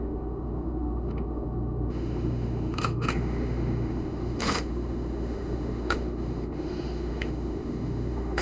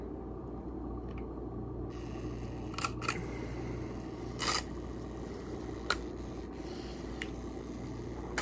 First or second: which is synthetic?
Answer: first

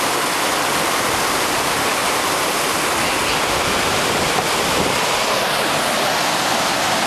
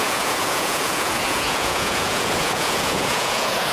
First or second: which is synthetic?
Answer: second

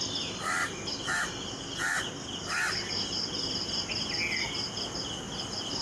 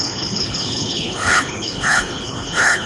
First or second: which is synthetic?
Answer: second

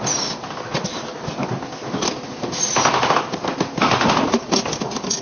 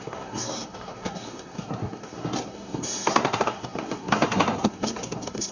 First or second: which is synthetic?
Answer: second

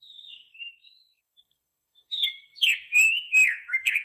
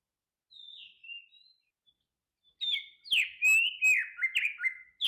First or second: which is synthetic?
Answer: first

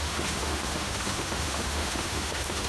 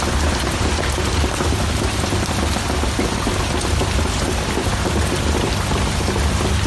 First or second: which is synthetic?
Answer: first